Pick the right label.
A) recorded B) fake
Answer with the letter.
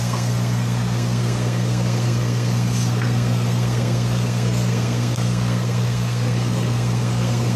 B